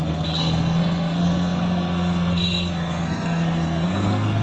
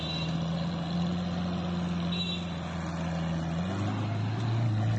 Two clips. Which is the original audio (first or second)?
second